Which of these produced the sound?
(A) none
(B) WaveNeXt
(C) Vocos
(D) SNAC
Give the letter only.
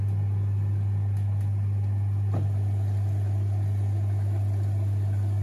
A